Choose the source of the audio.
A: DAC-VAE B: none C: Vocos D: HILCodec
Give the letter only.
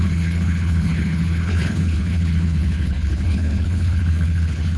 D